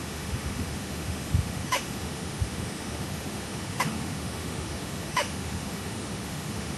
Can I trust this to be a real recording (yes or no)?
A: no